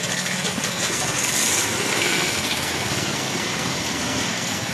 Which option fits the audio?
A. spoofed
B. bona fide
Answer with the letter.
A